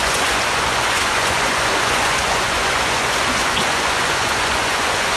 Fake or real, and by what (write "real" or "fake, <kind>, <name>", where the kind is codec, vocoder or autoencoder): fake, vocoder, Vocos